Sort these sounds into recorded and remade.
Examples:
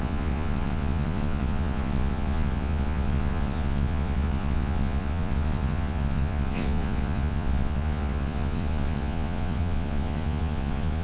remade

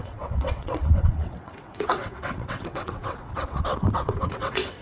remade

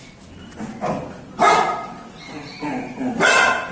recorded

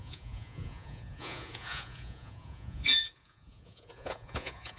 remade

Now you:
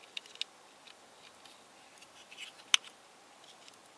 recorded